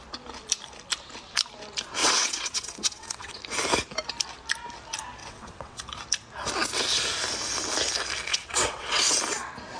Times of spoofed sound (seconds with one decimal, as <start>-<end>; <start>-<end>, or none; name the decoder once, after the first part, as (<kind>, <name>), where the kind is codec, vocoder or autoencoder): 2.0-3.4 (vocoder, WaveNeXt); 5.2-5.8; 8.3-9.1